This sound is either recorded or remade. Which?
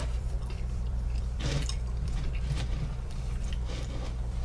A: remade